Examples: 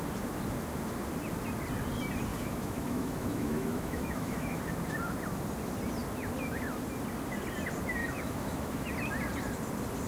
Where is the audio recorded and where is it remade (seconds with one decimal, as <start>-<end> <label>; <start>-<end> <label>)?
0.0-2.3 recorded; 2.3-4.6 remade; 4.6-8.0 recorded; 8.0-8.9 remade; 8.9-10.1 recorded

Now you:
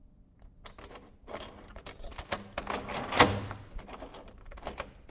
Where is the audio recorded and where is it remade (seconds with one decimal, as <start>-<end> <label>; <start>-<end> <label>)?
0.0-5.1 recorded

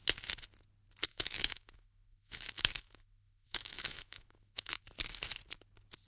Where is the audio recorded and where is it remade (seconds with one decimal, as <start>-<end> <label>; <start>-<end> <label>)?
0.0-1.1 recorded; 1.1-4.8 remade; 4.8-6.1 recorded

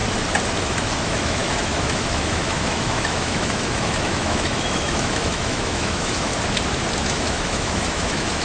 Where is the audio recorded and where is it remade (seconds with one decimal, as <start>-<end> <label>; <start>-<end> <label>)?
0.0-0.6 recorded; 0.6-6.3 remade; 6.3-7.0 recorded; 7.0-8.4 remade